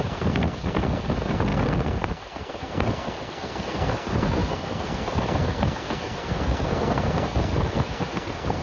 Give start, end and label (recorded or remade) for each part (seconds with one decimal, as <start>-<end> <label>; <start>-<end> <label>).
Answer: 0.0-8.6 remade